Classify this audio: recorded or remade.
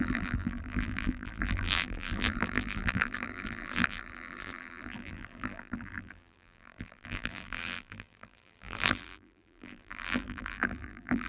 remade